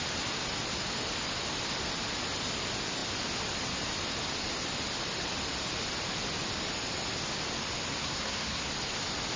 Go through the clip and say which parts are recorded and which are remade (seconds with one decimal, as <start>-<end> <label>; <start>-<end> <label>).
0.0-8.0 recorded; 8.0-8.7 remade; 8.7-9.4 recorded